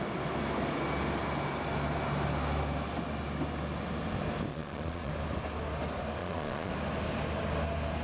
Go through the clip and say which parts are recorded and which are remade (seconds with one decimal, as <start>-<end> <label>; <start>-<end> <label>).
0.0-4.5 recorded; 4.5-5.1 remade; 5.1-6.2 recorded; 6.2-6.7 remade; 6.7-8.0 recorded

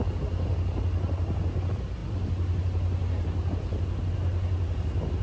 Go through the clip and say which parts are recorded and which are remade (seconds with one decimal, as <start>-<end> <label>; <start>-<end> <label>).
0.0-5.2 recorded